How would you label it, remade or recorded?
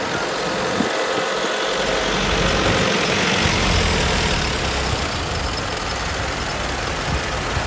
recorded